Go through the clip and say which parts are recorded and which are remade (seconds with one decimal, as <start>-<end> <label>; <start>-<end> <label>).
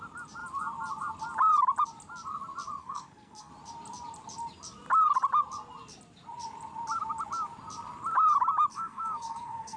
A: 0.0-2.8 recorded; 2.8-3.5 remade; 3.5-8.7 recorded; 8.7-9.8 remade